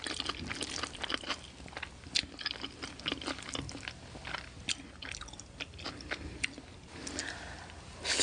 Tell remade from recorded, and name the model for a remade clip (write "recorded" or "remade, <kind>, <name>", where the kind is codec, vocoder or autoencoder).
recorded